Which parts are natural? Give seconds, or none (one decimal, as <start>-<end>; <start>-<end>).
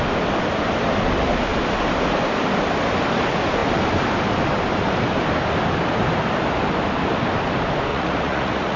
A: 0.0-7.9